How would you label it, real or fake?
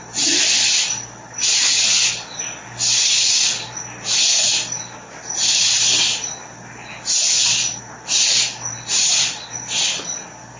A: real